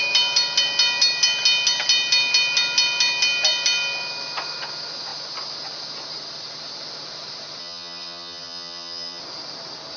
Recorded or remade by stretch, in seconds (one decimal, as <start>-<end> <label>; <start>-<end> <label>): 0.0-7.6 recorded; 7.6-9.2 remade; 9.2-10.0 recorded